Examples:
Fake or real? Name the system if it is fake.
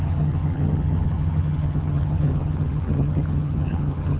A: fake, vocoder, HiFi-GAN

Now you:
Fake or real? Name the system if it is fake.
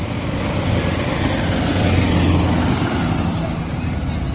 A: real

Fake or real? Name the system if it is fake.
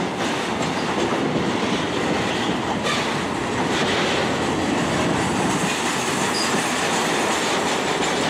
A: real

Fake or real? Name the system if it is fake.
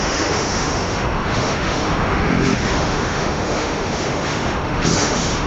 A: fake, autoencoder, DAC-VAE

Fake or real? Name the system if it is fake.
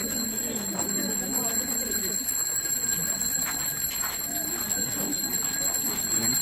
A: real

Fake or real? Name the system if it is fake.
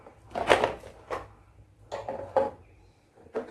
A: real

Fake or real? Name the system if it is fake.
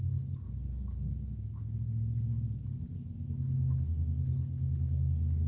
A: real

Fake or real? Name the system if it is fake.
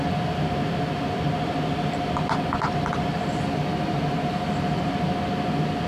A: real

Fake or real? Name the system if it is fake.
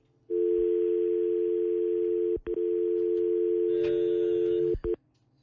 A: real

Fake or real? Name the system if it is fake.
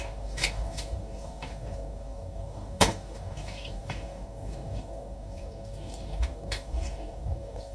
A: fake, codec, DAC